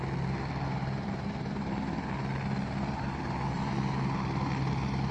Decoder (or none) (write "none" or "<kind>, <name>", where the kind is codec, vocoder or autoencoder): none